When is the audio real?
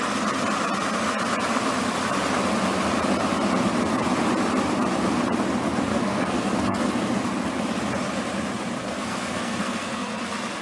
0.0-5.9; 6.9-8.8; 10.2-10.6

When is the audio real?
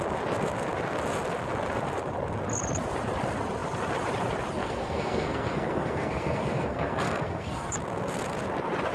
0.0-4.6; 7.7-8.9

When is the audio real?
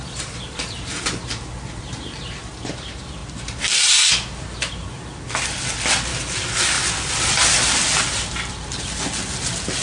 0.0-9.8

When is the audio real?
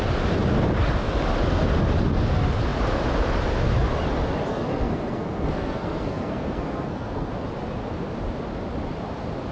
0.0-4.5; 7.3-9.5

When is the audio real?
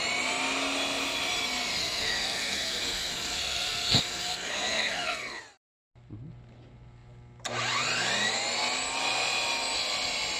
0.0-1.8; 5.4-10.4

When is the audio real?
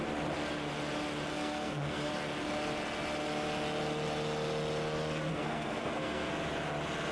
0.0-1.3; 2.1-5.3; 6.3-7.1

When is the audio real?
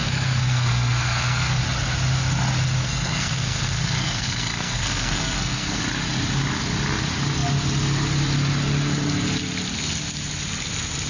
1.6-2.8; 5.8-11.1